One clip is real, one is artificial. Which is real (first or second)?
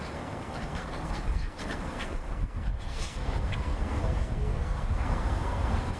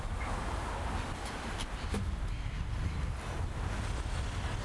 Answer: second